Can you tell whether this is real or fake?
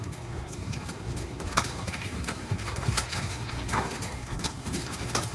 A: fake